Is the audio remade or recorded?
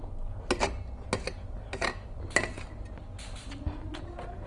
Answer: recorded